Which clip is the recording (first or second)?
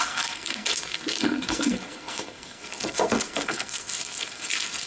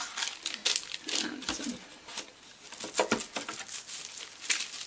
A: second